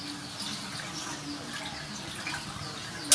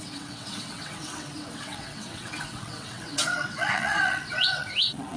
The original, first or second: first